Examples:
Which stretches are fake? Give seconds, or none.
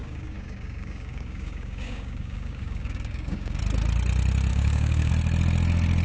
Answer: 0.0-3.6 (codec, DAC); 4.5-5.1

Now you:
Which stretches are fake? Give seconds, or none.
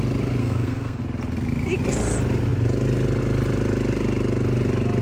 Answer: 0.4-1.0 (codec, SNAC)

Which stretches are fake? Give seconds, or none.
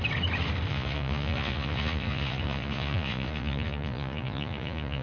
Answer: 0.7-5.0 (vocoder, Vocos)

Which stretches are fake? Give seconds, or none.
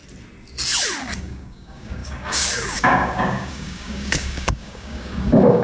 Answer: 1.2-5.6 (codec, DAC)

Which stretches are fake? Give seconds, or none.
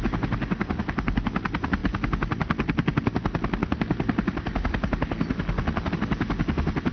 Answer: none